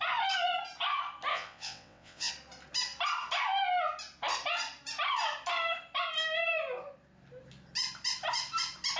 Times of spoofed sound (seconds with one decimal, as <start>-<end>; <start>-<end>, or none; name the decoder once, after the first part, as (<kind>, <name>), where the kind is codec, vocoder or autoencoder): 1.3-2.3 (vocoder, WaveNeXt)